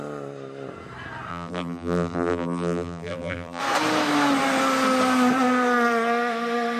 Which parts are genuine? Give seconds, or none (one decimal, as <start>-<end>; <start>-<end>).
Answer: 0.0-1.3; 3.6-6.8